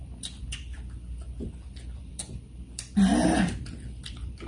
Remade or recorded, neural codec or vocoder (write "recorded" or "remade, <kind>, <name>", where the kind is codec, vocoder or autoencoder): remade, vocoder, BigVGAN v2